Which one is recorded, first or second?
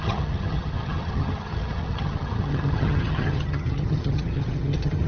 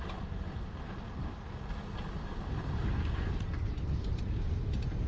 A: second